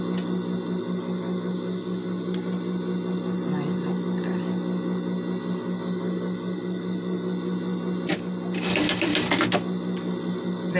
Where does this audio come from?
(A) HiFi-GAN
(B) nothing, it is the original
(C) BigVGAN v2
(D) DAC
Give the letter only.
B